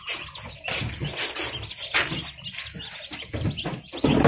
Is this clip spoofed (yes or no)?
no